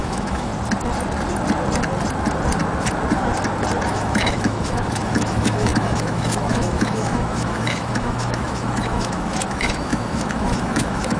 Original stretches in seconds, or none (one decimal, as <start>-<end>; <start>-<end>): 0.5-3.8

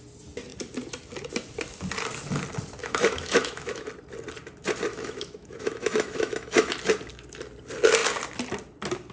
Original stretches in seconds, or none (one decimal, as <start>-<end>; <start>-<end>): 0.0-2.8; 3.9-4.9; 6.7-9.1

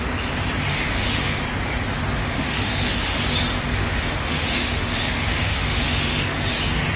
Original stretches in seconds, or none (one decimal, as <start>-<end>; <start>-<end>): 0.0-0.7; 1.4-2.2; 3.2-3.7; 6.2-7.0

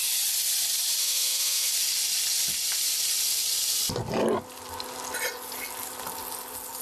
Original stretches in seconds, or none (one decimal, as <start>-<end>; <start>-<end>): 0.0-1.0; 1.7-6.8

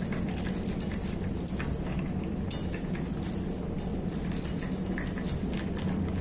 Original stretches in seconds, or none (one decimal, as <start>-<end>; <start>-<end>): 0.0-6.2